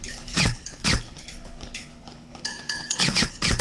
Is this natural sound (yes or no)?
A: no